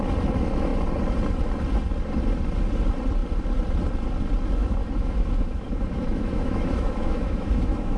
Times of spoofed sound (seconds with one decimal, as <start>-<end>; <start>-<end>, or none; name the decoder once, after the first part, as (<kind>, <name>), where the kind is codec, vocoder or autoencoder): 4.6-8.0 (autoencoder, DAC-VAE)